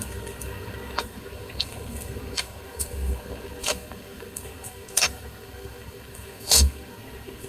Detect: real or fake fake